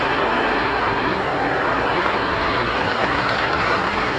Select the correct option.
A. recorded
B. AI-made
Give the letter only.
B